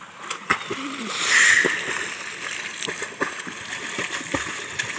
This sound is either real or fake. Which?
real